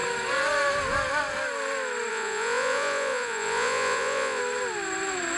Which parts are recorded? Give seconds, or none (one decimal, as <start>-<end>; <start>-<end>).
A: 0.0-2.1; 4.4-5.4